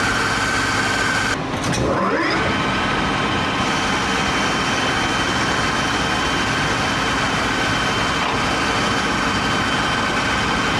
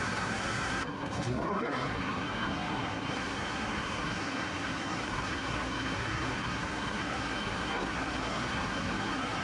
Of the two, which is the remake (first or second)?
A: second